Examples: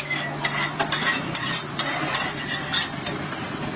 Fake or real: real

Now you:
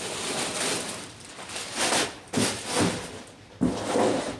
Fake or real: real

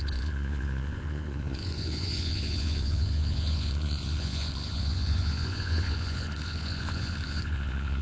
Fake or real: fake